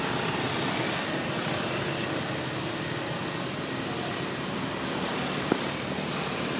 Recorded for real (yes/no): yes